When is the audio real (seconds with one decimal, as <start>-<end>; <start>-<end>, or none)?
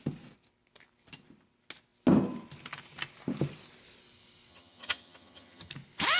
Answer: 0.0-4.5; 5.7-6.2